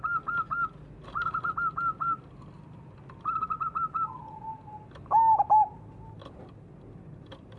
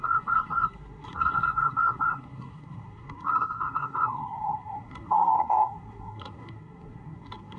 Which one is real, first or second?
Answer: first